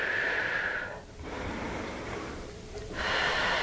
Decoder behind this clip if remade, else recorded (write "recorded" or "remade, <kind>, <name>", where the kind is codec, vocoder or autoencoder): remade, vocoder, BigVGAN v2